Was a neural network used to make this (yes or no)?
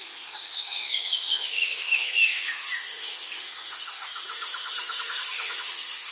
yes